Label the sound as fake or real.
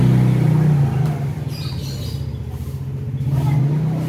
real